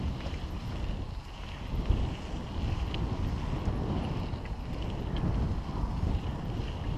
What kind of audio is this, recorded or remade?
recorded